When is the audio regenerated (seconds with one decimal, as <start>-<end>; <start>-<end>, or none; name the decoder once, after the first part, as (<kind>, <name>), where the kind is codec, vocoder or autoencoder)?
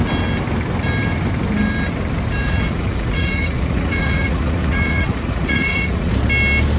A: 2.4-6.1 (vocoder, Vocos)